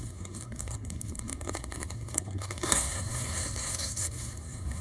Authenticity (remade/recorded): remade